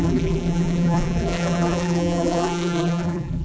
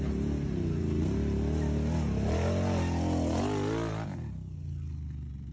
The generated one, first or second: first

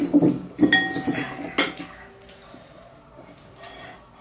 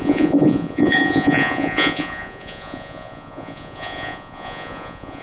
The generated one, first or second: second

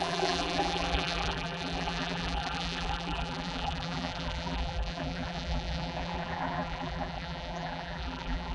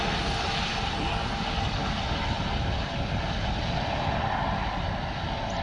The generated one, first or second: first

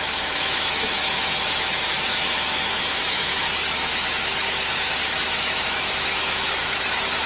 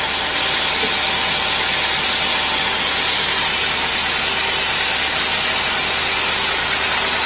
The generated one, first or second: first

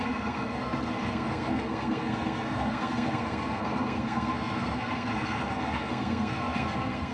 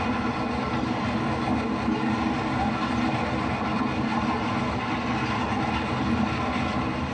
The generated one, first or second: first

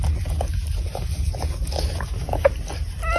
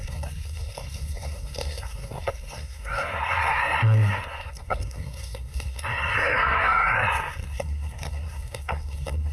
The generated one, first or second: second